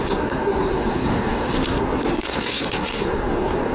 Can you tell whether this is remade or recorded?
remade